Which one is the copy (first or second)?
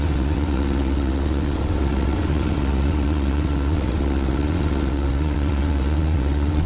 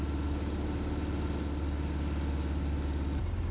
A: first